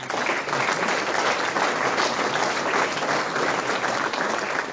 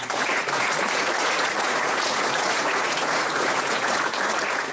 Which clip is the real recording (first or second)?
first